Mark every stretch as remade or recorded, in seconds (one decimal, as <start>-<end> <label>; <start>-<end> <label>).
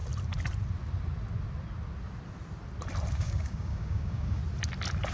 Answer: 0.0-3.1 recorded; 3.1-4.4 remade; 4.4-5.1 recorded